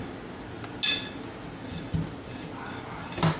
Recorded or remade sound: recorded